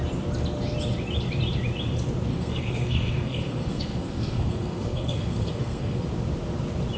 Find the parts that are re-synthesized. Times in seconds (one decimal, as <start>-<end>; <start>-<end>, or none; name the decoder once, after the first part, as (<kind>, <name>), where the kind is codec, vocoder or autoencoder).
2.3-6.0 (codec, SNAC)